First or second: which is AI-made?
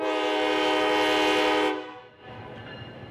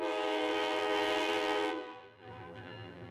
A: second